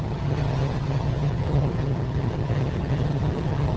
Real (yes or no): no